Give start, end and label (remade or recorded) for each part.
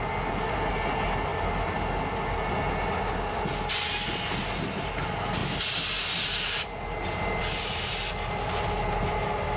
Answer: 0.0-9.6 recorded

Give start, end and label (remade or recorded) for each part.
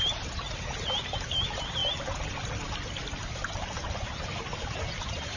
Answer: 0.0-5.4 recorded